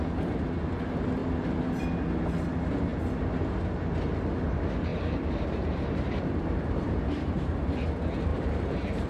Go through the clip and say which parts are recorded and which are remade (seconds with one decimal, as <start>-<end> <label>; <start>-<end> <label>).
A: 0.0-4.9 recorded; 4.9-7.7 remade; 7.7-8.3 recorded; 8.3-9.1 remade